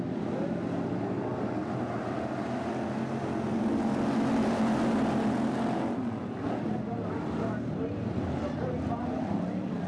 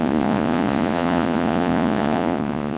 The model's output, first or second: second